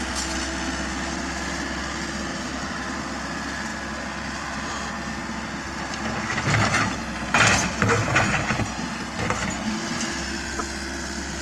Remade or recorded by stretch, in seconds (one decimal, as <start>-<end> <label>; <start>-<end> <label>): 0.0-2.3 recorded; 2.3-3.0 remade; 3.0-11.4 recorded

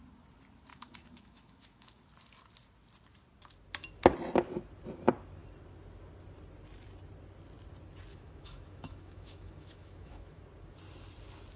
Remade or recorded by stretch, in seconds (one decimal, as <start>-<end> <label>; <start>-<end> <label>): 0.0-0.7 recorded; 0.7-2.0 remade; 2.0-8.1 recorded; 8.1-10.4 remade; 10.4-11.6 recorded

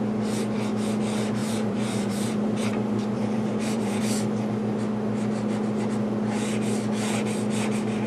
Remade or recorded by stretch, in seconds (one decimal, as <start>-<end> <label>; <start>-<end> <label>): 0.0-1.4 recorded; 1.4-4.0 remade; 4.0-8.1 recorded